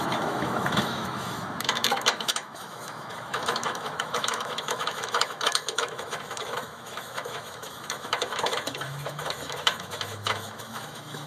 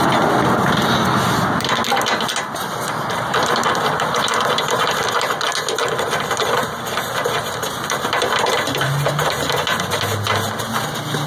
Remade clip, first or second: first